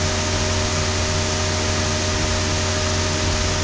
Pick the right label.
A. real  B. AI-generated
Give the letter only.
A